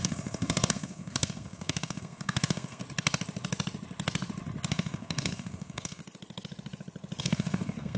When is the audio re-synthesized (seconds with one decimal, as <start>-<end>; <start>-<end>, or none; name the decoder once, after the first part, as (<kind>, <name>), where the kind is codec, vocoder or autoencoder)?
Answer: 0.0-2.8 (codec, SNAC); 4.7-6.0; 7.2-8.0